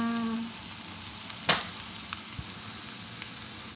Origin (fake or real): real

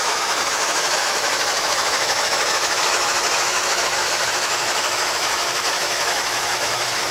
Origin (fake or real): fake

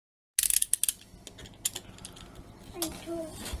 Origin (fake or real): real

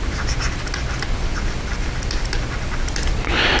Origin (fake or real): real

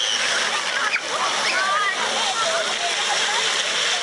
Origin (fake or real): real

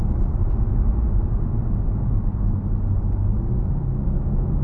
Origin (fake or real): real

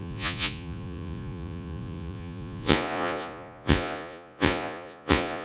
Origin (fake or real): fake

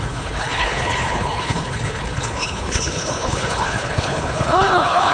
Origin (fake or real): fake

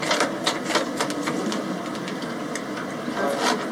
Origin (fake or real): real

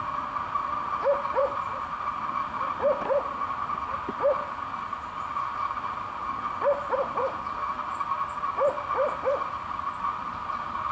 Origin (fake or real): real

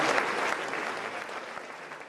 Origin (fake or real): real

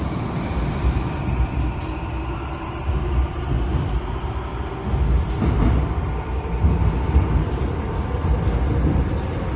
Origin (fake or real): real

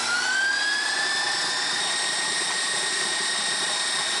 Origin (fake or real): real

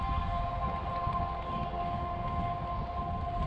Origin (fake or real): real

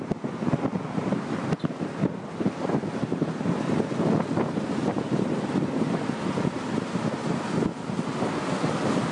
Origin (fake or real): real